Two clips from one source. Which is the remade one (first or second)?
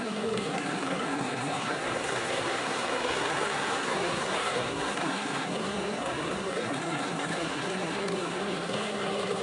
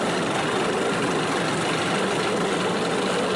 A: first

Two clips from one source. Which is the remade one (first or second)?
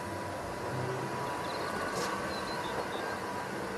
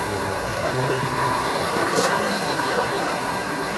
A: second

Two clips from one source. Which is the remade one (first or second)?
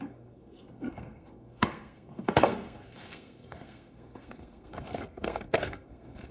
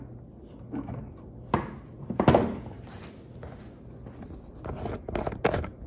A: first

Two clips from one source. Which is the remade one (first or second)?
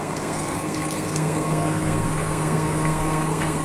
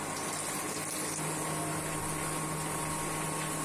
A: first